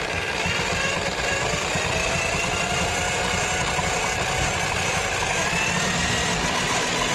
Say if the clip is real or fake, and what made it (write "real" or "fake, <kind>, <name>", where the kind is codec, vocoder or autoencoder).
real